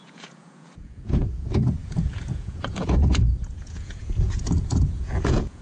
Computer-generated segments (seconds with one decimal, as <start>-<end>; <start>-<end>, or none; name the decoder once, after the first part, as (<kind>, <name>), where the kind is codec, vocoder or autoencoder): 0.0-5.6 (vocoder, Vocos)